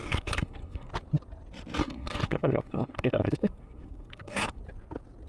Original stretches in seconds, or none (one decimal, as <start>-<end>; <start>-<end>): 0.9-1.8; 4.6-5.3